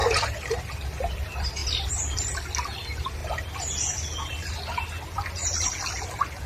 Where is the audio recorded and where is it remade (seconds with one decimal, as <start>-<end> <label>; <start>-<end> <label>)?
0.0-0.6 remade; 0.6-6.5 recorded